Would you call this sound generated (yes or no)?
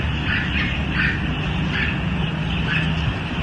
no